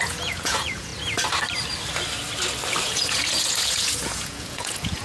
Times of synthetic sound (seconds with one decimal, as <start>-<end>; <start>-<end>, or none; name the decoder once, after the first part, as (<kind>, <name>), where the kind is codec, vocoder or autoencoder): 0.0-0.9 (vocoder, Vocos); 2.8-5.0